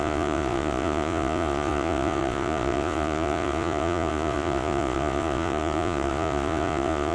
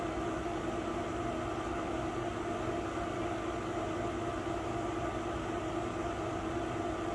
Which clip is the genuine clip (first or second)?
second